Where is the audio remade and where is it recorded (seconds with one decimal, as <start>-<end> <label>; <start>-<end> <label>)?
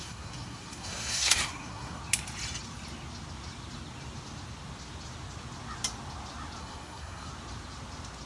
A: 0.0-2.0 remade; 2.0-6.6 recorded; 6.6-7.3 remade; 7.3-8.3 recorded